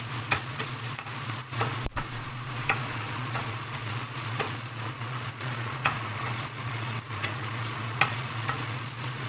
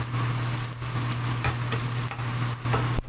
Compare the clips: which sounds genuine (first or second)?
second